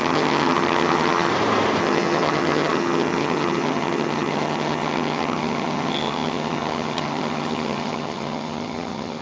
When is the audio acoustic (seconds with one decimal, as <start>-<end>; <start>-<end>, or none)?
1.3-1.8